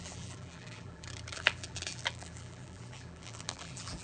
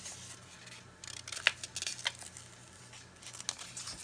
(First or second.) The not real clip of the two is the first